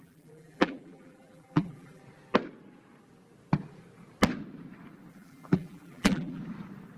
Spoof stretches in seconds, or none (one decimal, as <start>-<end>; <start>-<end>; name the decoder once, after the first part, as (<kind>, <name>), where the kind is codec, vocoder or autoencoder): 0.0-2.0 (vocoder, BigVGAN v2); 5.1-6.4